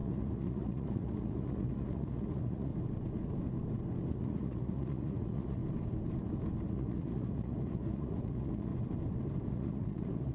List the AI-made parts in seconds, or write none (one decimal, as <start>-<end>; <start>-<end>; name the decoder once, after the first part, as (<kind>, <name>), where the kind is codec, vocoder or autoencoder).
0.0-2.7 (vocoder, Vocos); 4.1-5.6; 6.7-8.7; 9.5-10.3

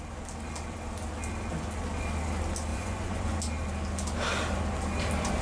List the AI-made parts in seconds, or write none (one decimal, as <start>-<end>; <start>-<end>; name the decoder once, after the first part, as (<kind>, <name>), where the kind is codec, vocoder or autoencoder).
2.7-3.4 (vocoder, Vocos)

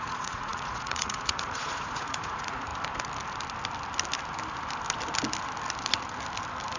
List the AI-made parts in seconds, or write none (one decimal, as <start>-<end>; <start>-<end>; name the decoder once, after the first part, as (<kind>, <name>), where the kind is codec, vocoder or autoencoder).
0.0-2.7 (vocoder, Vocos)

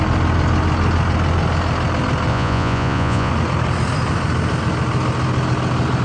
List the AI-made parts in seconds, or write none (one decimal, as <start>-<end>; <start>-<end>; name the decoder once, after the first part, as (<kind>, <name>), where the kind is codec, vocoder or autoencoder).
2.3-3.3 (vocoder, Vocos)

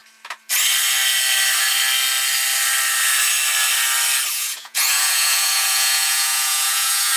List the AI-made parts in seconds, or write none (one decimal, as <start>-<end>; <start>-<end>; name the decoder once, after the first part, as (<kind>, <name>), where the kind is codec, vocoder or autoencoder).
4.3-7.2 (vocoder, Vocos)